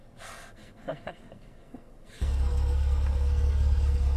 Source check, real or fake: fake